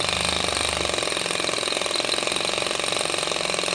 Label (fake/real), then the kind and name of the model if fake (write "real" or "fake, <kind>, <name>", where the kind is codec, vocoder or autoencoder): real